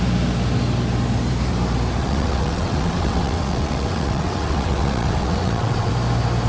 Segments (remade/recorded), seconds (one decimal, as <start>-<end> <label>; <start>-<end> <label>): 0.0-2.0 recorded; 2.0-5.9 remade; 5.9-6.5 recorded